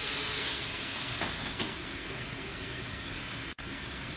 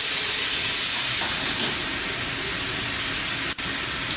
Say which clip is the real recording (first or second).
second